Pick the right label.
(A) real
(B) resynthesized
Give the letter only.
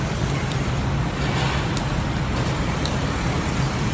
A